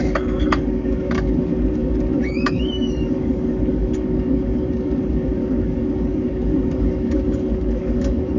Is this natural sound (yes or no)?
no